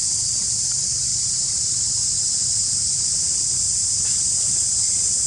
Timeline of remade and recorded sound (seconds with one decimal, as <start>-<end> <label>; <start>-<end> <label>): 0.0-1.1 recorded; 1.1-1.7 remade; 1.7-2.6 recorded; 2.6-3.3 remade; 3.3-3.8 recorded; 3.8-4.5 remade; 4.5-5.3 recorded